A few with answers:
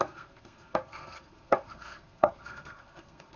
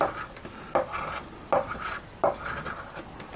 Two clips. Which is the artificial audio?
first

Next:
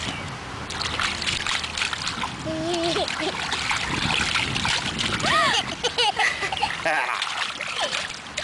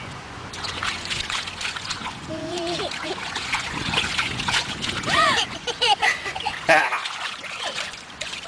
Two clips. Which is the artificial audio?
second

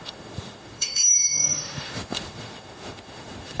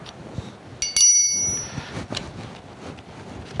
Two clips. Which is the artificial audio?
first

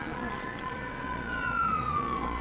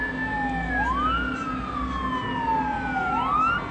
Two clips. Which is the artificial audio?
first